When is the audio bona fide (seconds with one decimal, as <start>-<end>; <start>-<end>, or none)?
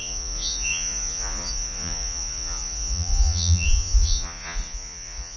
none